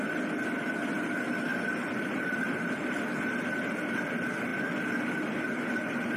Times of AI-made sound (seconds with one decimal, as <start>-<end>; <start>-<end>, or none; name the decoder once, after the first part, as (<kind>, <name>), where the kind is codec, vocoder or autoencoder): 1.5-3.0 (vocoder, BigVGAN v2)